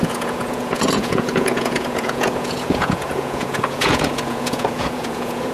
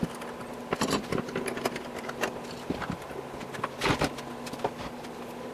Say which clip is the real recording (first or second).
second